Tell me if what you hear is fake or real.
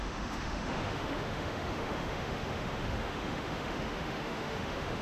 fake